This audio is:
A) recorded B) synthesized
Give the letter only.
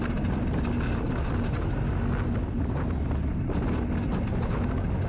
A